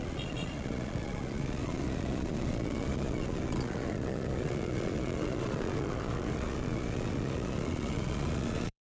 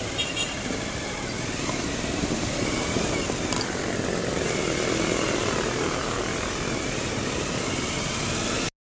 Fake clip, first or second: first